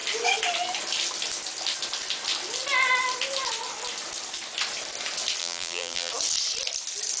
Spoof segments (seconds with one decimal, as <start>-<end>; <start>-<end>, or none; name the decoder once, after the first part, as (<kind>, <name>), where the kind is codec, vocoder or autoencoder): 5.4-6.1 (vocoder, BigVGAN v2)